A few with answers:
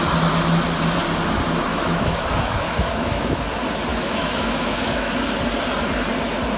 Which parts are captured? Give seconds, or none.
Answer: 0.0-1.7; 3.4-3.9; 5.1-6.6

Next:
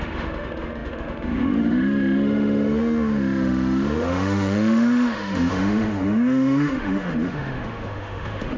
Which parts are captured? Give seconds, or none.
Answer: none

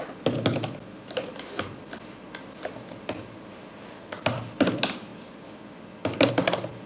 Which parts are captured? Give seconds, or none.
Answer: 0.0-6.9

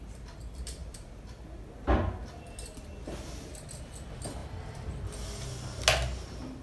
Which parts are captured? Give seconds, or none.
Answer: 0.0-6.6